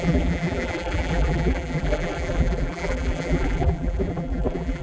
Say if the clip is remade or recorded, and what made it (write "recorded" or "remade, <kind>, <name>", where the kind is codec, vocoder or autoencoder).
remade, vocoder, BigVGAN v2